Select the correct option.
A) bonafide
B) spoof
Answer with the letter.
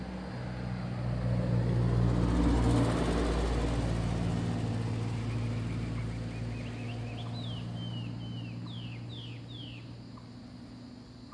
A